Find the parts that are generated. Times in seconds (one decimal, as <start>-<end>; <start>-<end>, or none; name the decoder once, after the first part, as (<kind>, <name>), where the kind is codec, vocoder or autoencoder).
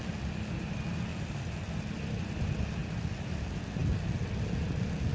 1.1-2.3 (vocoder, BigVGAN v2); 2.8-3.4